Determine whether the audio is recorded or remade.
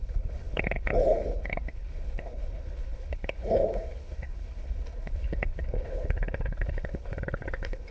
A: remade